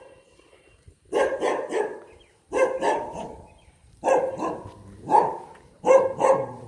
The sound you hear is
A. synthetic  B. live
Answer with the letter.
A